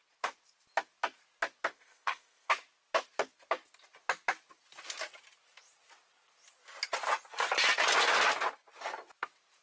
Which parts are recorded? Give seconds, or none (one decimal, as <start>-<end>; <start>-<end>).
0.0-1.7; 2.5-9.6